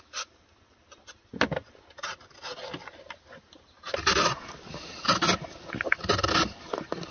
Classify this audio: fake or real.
real